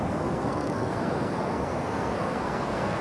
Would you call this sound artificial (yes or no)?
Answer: yes